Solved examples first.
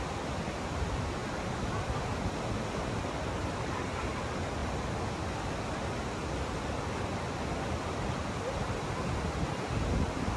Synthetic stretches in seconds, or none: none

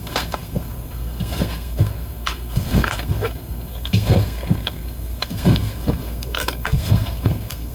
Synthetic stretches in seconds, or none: 0.0-7.7 (codec, SNAC)

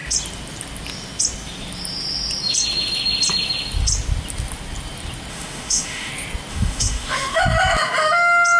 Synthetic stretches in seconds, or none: 5.3-6.1 (autoencoder, DAC-VAE); 6.5-7.4

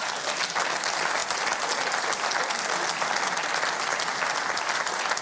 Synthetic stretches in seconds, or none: none

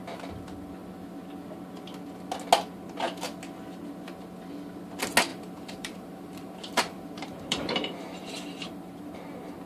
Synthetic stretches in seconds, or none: 5.3-9.7 (vocoder, BigVGAN v2)